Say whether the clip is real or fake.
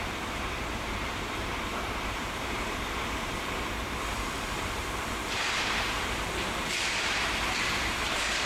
fake